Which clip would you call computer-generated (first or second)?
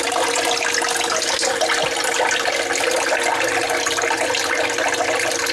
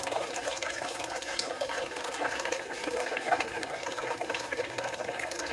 second